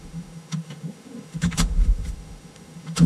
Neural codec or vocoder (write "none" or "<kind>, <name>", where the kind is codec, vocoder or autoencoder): autoencoder, DAC-VAE